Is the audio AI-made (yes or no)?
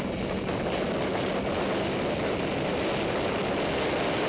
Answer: no